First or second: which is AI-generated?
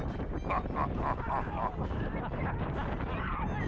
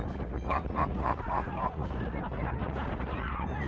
second